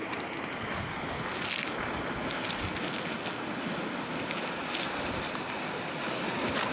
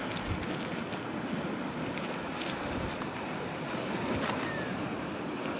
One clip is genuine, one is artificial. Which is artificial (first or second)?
second